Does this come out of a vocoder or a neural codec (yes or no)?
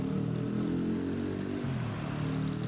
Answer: no